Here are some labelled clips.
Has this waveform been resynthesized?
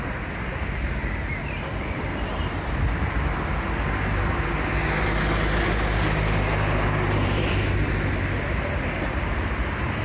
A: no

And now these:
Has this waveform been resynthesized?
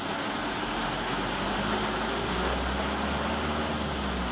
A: no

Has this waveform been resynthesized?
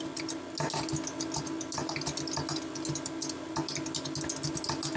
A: no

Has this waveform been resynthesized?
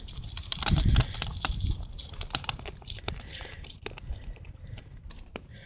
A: yes